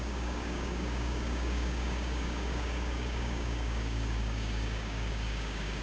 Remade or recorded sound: remade